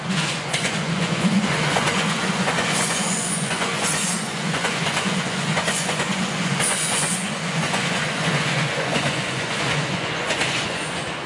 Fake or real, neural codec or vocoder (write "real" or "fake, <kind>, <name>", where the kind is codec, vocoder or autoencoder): fake, vocoder, Vocos